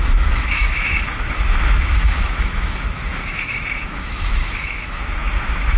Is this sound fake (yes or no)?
yes